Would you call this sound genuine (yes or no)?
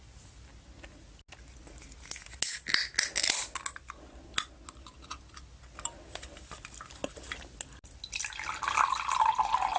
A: yes